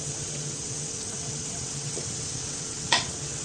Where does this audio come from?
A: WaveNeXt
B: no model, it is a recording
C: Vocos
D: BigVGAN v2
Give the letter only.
A